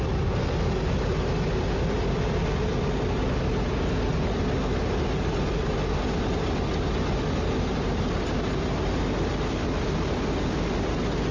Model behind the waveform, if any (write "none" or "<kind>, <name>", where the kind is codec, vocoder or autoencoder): none